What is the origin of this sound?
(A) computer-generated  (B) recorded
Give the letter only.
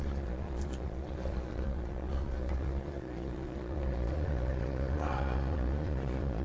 A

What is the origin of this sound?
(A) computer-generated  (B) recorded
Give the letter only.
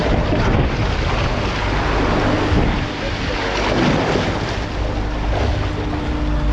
B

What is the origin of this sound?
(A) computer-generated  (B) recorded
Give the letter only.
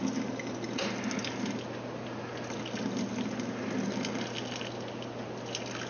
B